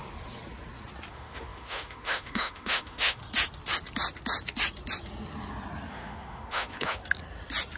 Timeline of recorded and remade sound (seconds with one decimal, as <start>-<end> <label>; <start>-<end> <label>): 0.0-1.1 recorded; 1.1-3.2 remade; 3.2-5.9 recorded; 5.9-7.0 remade; 7.0-7.8 recorded